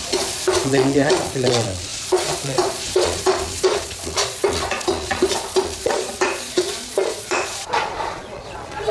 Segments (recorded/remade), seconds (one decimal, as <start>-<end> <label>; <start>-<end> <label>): 0.0-8.9 remade